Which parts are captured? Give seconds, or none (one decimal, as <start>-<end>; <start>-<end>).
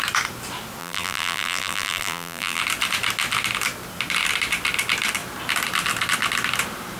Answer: 0.0-0.8; 2.6-7.0